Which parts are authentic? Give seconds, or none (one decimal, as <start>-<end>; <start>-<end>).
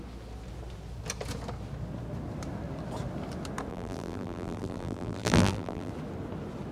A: 0.0-3.7; 5.9-6.7